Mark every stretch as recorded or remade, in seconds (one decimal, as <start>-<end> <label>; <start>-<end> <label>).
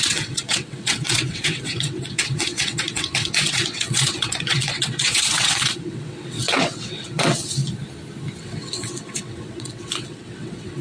0.0-7.6 remade; 7.6-8.4 recorded; 8.4-10.8 remade